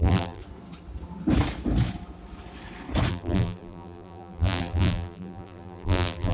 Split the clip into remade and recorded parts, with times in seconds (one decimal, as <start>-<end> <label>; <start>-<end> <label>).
0.0-0.4 remade; 0.4-3.1 recorded; 3.1-6.3 remade